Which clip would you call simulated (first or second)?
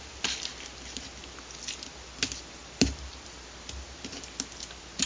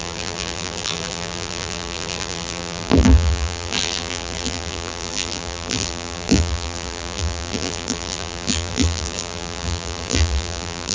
second